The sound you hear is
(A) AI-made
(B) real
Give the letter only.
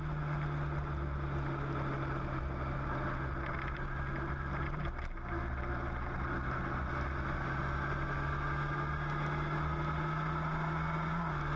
B